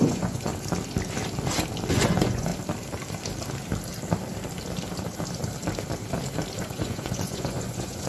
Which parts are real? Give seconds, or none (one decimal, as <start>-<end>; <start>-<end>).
0.5-1.9; 2.5-6.6